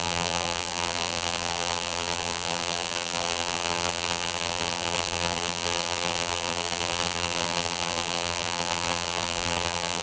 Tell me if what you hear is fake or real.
fake